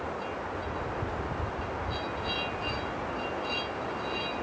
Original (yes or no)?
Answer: yes